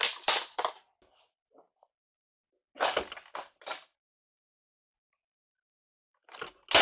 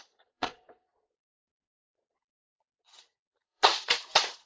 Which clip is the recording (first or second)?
first